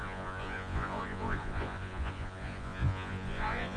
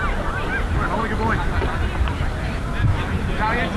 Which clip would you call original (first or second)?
second